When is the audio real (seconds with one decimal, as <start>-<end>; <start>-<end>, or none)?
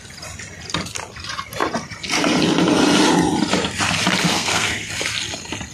0.0-4.3; 4.9-5.7